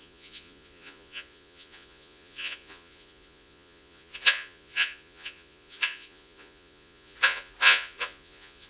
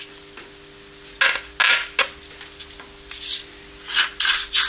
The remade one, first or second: first